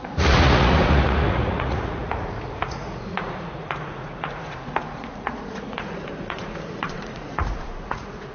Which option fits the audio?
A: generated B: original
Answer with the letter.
A